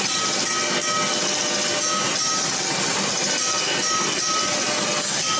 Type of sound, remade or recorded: recorded